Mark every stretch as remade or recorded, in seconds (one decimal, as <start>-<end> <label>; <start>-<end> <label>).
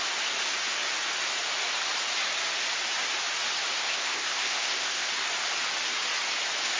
0.0-3.8 recorded; 3.8-5.1 remade; 5.1-6.8 recorded